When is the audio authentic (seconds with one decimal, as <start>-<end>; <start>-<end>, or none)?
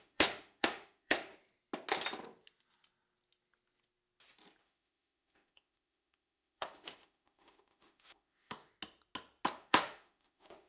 1.3-4.6; 8.7-9.6